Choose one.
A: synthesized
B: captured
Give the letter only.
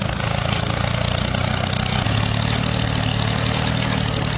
B